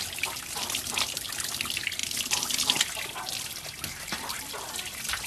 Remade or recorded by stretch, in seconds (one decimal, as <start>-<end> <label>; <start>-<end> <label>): 0.0-2.0 remade; 2.0-4.0 recorded; 4.0-5.3 remade